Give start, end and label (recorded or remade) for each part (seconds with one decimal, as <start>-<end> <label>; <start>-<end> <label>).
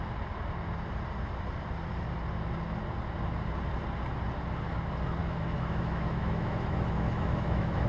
0.0-5.2 recorded; 5.2-7.9 remade